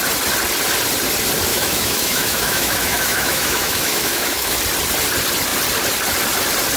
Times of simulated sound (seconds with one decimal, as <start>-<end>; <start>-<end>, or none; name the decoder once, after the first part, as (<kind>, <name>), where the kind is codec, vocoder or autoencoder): 1.5-4.6 (autoencoder, DAC-VAE)